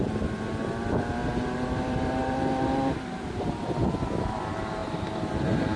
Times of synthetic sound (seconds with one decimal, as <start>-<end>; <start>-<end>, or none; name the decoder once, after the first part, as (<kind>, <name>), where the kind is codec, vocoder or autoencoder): 1.2-3.5 (vocoder, BigVGAN v2); 4.8-5.3